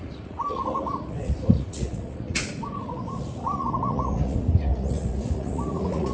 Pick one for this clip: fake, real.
fake